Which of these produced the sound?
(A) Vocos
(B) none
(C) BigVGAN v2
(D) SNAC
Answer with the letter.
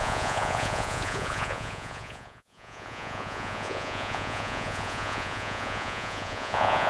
A